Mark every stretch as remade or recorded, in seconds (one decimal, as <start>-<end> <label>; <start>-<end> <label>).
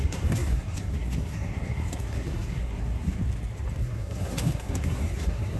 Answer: 0.0-3.2 remade; 3.2-3.8 recorded; 3.8-5.6 remade